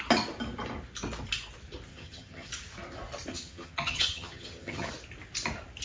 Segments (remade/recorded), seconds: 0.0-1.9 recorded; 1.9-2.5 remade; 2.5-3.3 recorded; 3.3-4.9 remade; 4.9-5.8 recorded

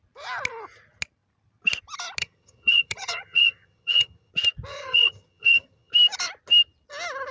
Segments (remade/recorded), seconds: 0.0-2.2 recorded; 2.2-4.3 remade; 4.3-4.7 recorded; 4.7-5.9 remade; 5.9-7.3 recorded